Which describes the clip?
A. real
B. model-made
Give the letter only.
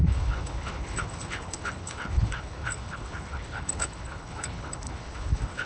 B